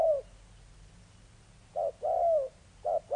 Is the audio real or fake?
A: real